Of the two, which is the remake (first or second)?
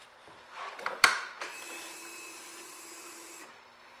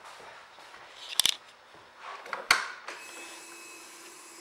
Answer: first